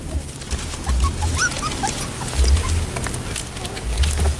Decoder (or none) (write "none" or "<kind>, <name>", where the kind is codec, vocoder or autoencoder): none